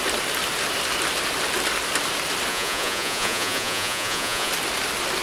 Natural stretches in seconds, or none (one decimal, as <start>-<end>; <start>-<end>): 0.0-2.5; 4.5-5.2